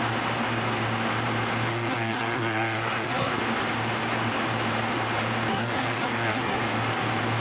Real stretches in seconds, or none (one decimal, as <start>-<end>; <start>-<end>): 0.0-1.7; 3.4-5.5; 6.6-7.4